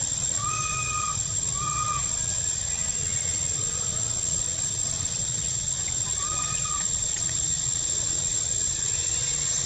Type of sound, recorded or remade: remade